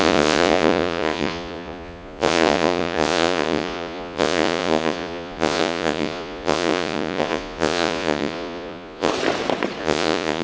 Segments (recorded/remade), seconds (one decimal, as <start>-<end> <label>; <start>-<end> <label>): 0.0-9.1 remade; 9.1-9.8 recorded; 9.8-10.4 remade